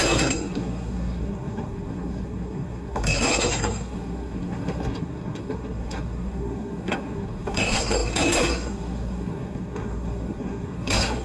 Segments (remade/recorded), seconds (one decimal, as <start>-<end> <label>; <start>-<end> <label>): 0.0-11.2 remade